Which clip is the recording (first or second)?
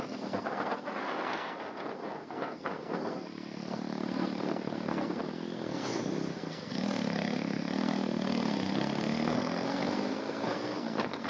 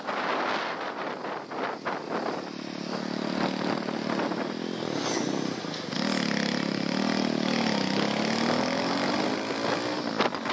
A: second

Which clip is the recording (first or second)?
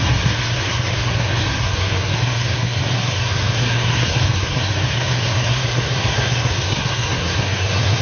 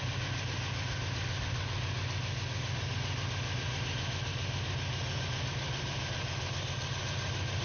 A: second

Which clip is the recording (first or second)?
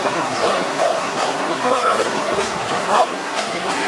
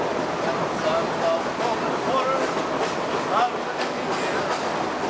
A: second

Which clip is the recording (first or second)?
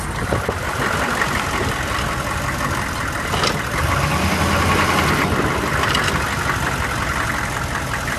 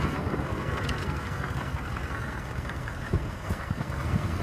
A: first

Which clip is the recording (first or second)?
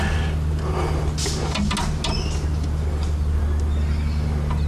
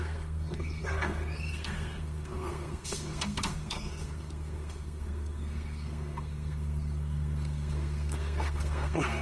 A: first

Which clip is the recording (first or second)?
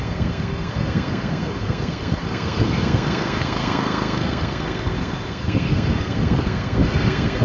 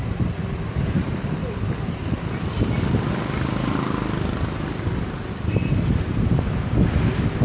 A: second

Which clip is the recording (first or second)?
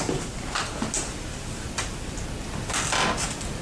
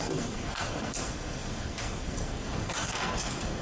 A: first